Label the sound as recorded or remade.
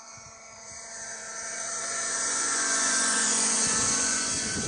remade